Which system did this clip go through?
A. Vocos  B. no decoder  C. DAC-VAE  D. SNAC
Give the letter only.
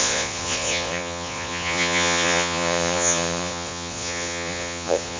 A